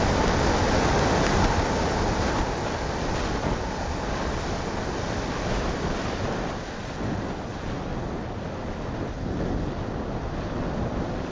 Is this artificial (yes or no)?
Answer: no